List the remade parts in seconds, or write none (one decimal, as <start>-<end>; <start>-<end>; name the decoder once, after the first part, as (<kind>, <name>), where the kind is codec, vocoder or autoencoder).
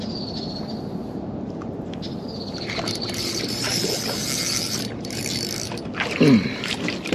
1.0-5.2 (vocoder, BigVGAN v2)